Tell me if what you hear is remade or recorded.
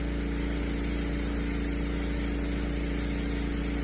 recorded